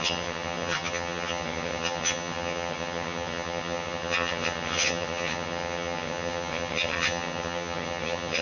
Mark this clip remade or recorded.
remade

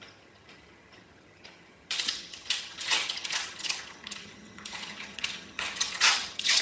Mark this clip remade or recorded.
remade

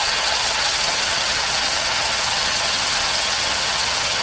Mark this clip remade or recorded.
remade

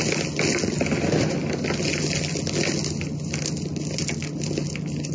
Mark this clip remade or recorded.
recorded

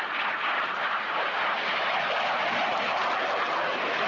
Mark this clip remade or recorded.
recorded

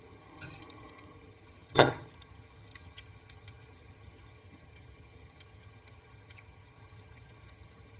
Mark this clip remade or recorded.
remade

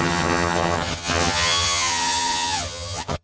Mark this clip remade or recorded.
remade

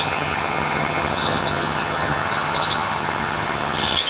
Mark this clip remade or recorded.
remade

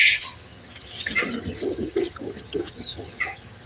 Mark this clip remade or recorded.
remade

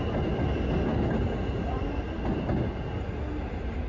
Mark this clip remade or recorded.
recorded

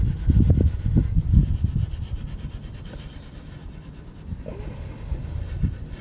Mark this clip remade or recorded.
recorded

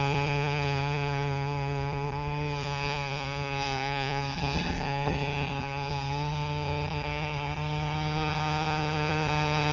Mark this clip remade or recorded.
remade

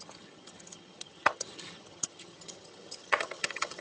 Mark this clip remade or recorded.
remade